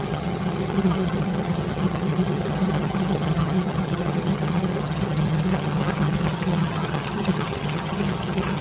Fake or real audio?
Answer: fake